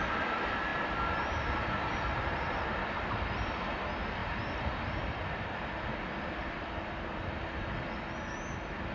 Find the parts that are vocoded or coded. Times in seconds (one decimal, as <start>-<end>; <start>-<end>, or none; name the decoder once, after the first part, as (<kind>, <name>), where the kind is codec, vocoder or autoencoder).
none